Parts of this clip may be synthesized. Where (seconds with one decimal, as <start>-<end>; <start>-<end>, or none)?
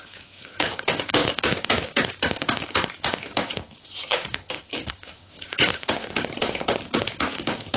0.0-7.8